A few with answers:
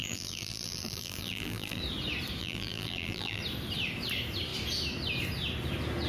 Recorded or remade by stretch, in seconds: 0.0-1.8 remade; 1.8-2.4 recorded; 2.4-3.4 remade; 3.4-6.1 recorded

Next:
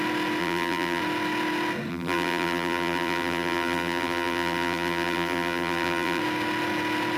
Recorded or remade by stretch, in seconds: 0.0-0.4 recorded; 0.4-1.0 remade; 1.0-1.9 recorded; 1.9-6.2 remade; 6.2-7.2 recorded